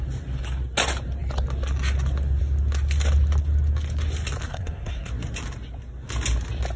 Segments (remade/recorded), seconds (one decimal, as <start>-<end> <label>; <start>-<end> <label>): 0.0-4.5 recorded; 4.5-5.1 remade; 5.1-6.8 recorded